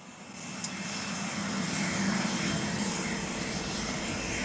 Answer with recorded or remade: recorded